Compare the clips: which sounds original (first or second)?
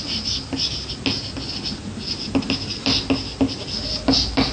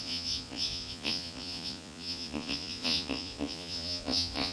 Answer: first